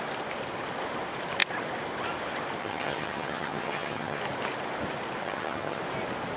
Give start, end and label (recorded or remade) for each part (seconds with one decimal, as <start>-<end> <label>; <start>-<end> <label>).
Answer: 0.0-2.6 recorded; 2.6-4.2 remade; 4.2-5.2 recorded; 5.2-5.8 remade; 5.8-6.4 recorded